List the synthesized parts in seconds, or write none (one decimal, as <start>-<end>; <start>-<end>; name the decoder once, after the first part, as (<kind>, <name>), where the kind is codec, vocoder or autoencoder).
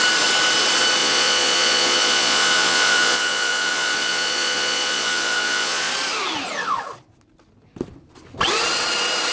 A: 1.0-5.9 (vocoder, Vocos)